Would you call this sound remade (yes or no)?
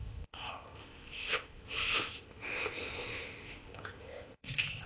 yes